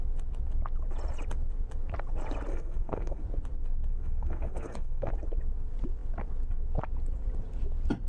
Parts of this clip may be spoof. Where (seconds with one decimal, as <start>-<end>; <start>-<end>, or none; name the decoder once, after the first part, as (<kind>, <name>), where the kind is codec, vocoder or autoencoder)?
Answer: 2.5-3.2 (codec, SNAC); 3.9-5.1